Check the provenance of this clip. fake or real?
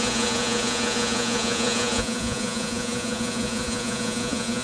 fake